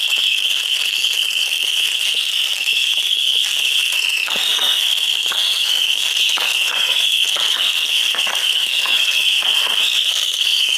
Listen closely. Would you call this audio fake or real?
fake